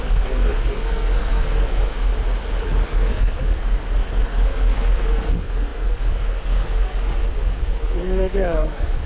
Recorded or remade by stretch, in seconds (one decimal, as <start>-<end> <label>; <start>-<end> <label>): 0.0-2.1 remade; 2.1-2.6 recorded; 2.6-9.1 remade